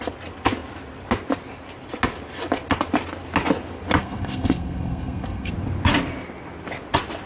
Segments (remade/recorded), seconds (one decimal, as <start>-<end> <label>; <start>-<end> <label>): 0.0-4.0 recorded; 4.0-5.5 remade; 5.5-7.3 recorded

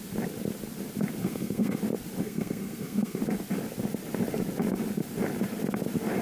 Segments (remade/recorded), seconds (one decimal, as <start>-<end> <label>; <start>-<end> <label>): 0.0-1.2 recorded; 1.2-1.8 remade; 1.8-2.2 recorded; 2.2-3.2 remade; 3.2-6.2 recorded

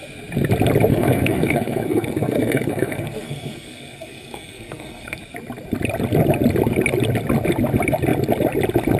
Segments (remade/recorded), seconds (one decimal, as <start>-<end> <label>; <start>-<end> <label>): 0.0-0.9 recorded; 0.9-5.2 remade; 5.2-9.0 recorded

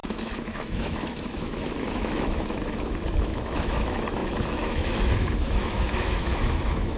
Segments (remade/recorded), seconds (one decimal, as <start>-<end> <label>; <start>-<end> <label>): 0.0-7.0 remade

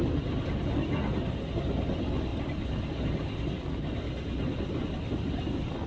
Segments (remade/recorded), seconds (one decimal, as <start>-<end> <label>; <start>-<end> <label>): 0.0-5.9 recorded

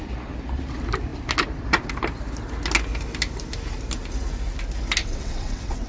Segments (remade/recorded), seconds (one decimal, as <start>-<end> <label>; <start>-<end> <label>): 0.0-5.0 recorded; 5.0-5.9 remade